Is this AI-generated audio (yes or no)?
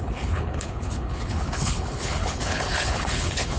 yes